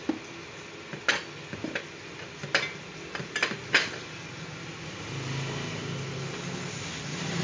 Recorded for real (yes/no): yes